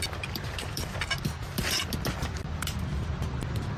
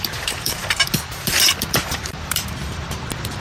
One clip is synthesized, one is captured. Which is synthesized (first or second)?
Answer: second